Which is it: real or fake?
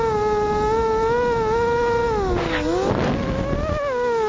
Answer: real